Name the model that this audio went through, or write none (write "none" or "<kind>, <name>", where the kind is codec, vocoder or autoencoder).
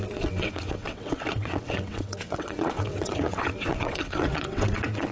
vocoder, WaveNeXt